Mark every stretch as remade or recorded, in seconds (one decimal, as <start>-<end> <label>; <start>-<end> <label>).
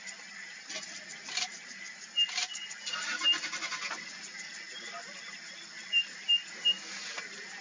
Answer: 0.0-7.6 recorded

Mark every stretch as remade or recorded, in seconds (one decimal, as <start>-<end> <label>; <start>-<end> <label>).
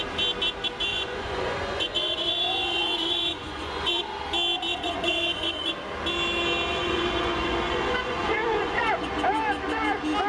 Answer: 0.0-0.9 recorded; 0.9-4.0 remade; 4.0-4.7 recorded; 4.7-5.7 remade; 5.7-6.7 recorded; 6.7-9.1 remade; 9.1-10.3 recorded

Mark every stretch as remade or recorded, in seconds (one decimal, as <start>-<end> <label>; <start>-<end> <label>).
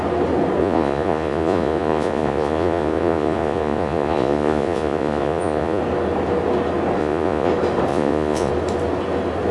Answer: 0.0-0.6 recorded; 0.6-5.8 remade; 5.8-7.0 recorded; 7.0-7.5 remade; 7.5-7.9 recorded; 7.9-8.5 remade; 8.5-9.5 recorded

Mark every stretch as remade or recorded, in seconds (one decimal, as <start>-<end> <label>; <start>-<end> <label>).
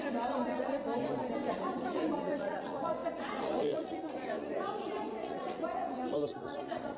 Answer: 0.0-0.8 remade; 0.8-1.5 recorded; 1.5-7.0 remade